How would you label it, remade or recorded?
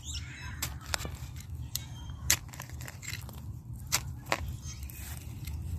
remade